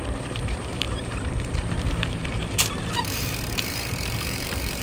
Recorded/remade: remade